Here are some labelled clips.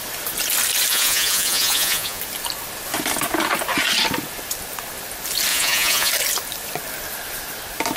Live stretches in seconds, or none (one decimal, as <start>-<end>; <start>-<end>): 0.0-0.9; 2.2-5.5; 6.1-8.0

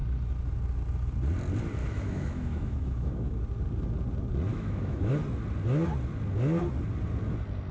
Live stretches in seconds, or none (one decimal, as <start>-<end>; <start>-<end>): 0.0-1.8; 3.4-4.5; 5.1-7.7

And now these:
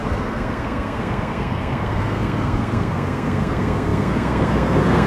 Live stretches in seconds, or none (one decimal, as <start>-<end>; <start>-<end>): none

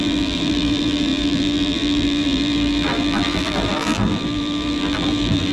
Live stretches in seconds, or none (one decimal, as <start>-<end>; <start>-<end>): none